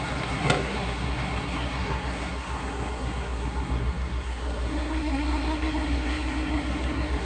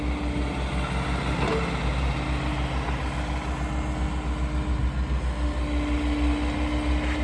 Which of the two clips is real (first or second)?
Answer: second